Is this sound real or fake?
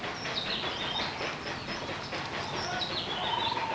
real